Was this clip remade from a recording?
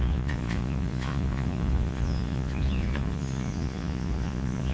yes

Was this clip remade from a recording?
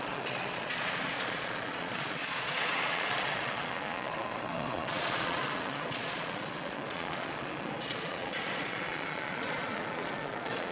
yes